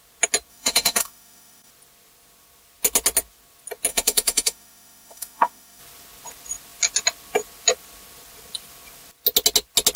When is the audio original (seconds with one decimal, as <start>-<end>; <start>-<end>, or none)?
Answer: 0.0-0.5; 1.7-3.9; 5.8-10.0